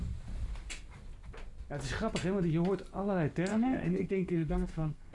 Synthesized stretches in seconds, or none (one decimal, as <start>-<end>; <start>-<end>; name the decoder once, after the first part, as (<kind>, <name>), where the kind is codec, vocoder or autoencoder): 3.5-5.1 (codec, SNAC)